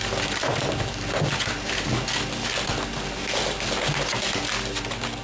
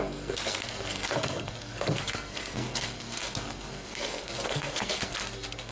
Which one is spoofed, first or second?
second